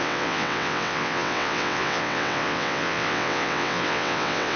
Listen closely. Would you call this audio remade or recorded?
remade